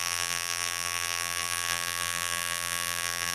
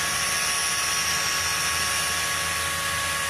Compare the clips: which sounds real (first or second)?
second